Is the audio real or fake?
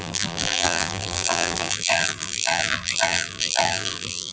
fake